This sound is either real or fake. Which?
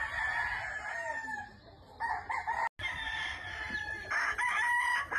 real